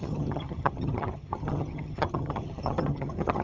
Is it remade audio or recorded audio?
remade